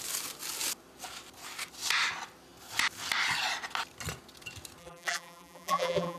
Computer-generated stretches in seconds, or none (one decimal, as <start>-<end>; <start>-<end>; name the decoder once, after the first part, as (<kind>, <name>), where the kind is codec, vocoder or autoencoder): 4.8-6.2 (vocoder, BigVGAN v2)